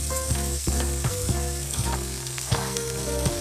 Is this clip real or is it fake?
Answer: fake